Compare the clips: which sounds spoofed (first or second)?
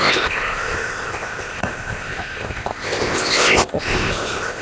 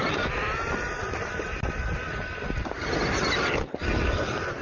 first